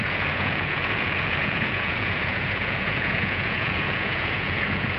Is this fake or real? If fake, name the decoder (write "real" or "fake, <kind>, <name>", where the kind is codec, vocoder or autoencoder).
fake, vocoder, Vocos